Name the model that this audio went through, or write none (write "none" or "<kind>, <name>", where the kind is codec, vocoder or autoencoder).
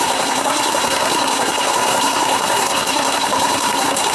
codec, SNAC